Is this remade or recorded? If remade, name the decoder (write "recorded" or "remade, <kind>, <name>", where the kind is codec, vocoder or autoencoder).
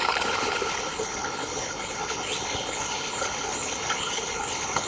remade, codec, HILCodec